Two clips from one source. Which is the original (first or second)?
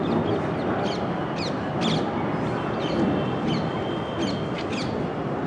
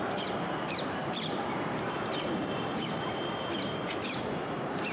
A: first